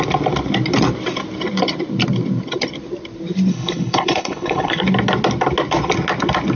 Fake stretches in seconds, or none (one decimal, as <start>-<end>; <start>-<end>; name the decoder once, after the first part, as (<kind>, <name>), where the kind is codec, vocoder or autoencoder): 3.5-4.8 (codec, HILCodec)

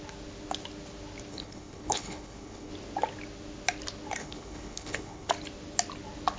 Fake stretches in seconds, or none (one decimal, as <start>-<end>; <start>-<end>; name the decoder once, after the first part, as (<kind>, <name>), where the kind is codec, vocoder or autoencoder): 1.3-2.7 (codec, HILCodec); 4.2-5.3

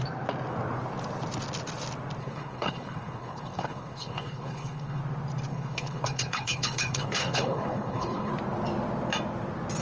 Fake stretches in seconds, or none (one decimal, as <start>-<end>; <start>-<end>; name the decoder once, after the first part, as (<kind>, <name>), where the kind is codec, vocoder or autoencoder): 2.2-5.0 (codec, HILCodec); 5.5-8.3

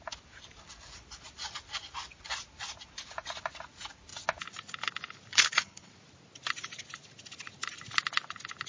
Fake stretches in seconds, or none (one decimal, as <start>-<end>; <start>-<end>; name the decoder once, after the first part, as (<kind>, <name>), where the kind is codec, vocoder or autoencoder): 5.3-5.9 (codec, HILCodec)

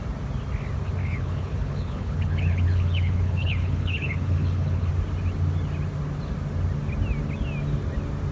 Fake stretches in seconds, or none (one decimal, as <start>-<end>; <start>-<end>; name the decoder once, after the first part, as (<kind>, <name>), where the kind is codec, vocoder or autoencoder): 1.0-4.9 (codec, HILCodec)